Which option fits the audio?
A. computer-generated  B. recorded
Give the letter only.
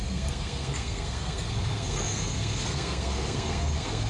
A